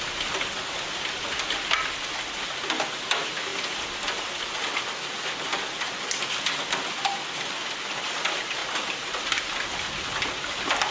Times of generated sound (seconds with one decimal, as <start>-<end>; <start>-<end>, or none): none